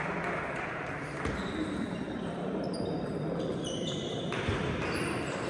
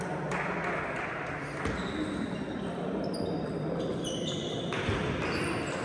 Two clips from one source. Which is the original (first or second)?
second